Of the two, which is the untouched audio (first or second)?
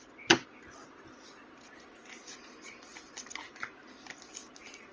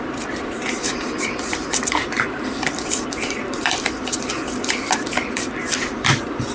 first